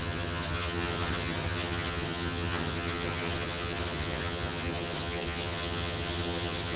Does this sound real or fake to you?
fake